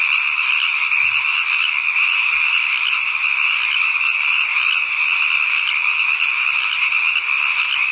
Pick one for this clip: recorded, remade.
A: recorded